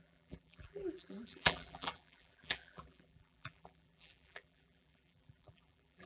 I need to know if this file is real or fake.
fake